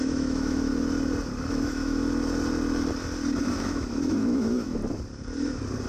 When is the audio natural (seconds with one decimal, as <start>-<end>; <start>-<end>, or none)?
0.7-1.5; 2.0-3.4; 4.8-5.9